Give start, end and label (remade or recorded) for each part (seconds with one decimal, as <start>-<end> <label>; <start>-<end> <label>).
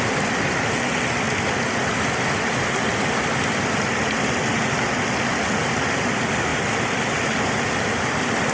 0.0-8.5 recorded